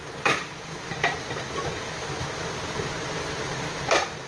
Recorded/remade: recorded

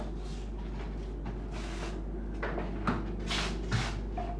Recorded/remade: recorded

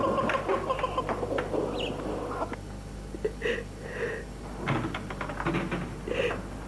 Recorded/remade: recorded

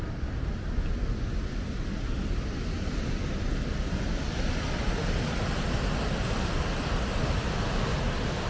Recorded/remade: recorded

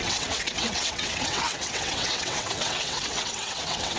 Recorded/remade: remade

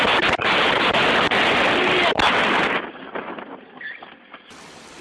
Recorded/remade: recorded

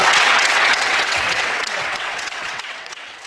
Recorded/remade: remade